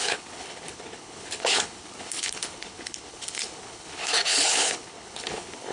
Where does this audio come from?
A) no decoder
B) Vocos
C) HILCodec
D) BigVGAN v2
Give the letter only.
C